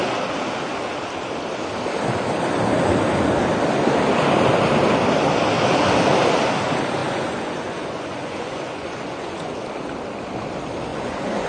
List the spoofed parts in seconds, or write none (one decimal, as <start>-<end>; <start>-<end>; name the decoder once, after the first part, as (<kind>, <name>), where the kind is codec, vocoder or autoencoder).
7.0-9.5 (vocoder, Vocos); 10.9-11.5